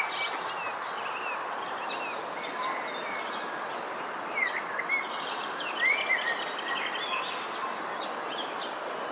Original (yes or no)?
yes